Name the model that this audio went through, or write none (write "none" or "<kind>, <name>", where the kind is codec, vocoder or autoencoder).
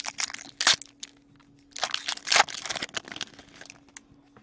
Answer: none